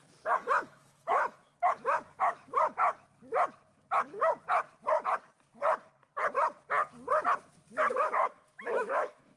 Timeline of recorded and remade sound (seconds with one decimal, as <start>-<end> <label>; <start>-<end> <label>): 0.0-2.8 remade; 2.8-7.9 recorded; 7.9-9.4 remade